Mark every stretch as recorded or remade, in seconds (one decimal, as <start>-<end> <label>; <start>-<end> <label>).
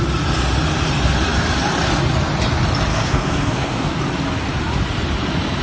0.0-2.9 recorded; 2.9-4.0 remade; 4.0-5.6 recorded